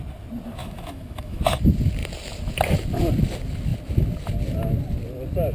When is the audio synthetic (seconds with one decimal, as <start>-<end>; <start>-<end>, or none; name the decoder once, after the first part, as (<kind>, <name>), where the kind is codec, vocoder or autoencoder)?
0.6-1.4 (autoencoder, DAC-VAE)